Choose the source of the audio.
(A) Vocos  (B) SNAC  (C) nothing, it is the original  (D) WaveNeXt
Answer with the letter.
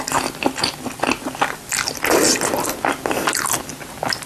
C